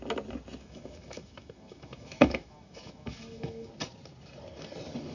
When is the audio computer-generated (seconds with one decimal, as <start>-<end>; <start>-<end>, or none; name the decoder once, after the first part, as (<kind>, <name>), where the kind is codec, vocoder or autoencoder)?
0.6-3.7 (autoencoder, DAC-VAE)